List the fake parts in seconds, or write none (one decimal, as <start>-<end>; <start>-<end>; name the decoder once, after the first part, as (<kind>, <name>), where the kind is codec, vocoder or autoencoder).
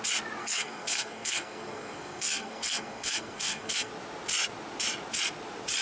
0.4-3.9 (codec, SNAC)